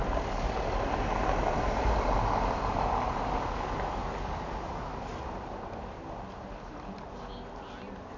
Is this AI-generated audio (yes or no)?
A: no